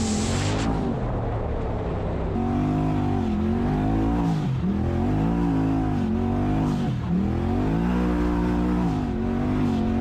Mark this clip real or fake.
real